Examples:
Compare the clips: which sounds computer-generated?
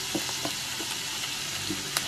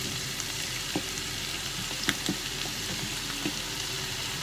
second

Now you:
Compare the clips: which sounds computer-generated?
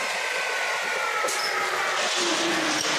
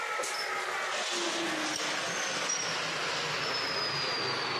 first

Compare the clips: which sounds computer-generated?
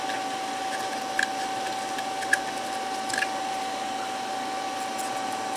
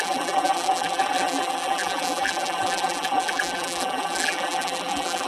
second